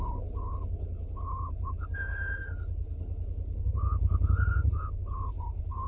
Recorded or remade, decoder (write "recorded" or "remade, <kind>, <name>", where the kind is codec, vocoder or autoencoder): remade, codec, HILCodec